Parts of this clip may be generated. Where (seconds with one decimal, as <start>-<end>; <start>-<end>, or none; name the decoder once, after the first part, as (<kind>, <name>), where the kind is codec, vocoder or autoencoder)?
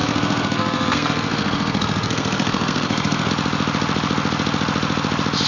0.0-3.3 (codec, SNAC)